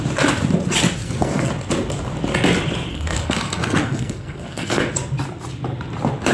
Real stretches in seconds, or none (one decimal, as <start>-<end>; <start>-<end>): 0.0-1.0; 1.5-2.9; 4.9-6.3